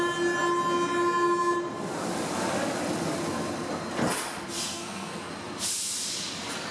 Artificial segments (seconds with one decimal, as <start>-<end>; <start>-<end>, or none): 4.7-5.2